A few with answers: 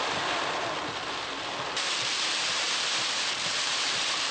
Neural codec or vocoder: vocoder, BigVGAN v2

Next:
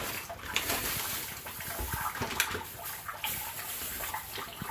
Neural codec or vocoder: none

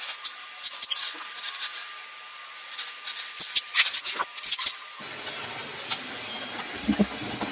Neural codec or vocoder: none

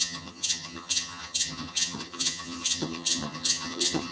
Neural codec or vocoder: vocoder, HiFi-GAN